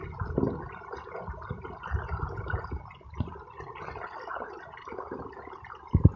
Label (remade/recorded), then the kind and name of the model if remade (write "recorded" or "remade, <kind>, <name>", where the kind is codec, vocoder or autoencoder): recorded